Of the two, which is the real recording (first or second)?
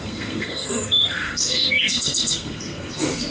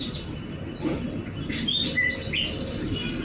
second